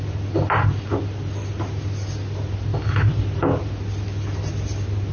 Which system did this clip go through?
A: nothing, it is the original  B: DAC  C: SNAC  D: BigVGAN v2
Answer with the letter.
A